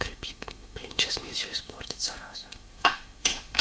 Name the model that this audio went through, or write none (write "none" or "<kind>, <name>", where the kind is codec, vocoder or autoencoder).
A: autoencoder, DAC-VAE